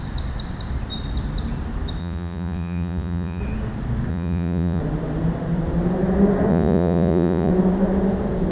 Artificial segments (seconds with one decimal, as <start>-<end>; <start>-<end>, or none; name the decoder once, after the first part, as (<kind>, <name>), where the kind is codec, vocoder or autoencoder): 2.0-3.4 (vocoder, Vocos); 4.1-4.8; 6.5-7.5